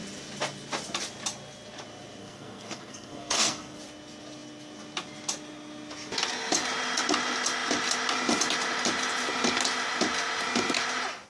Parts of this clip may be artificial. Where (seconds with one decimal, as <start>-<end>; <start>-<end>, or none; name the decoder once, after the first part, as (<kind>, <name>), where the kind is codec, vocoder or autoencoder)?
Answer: 2.2-3.8 (codec, SNAC)